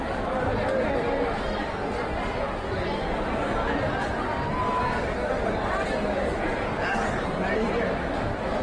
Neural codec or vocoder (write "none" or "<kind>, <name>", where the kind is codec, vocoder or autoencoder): none